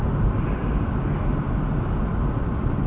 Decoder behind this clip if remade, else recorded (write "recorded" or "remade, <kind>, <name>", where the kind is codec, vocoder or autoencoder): recorded